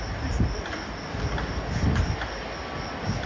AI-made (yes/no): no